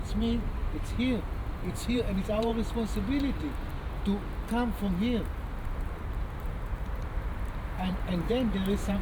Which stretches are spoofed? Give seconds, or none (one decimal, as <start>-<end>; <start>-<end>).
0.0-0.6; 1.2-2.5; 5.4-9.0